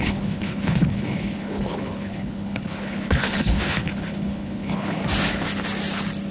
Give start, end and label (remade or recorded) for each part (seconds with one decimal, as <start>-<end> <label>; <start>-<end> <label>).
0.0-5.0 remade; 5.0-6.3 recorded